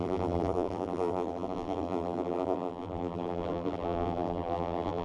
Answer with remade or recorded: remade